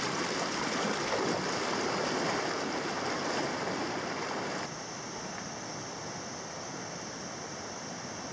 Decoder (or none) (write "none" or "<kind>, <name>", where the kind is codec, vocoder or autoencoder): none